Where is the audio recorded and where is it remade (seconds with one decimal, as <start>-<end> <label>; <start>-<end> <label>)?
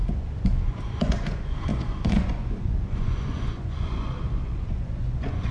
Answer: 0.0-5.5 remade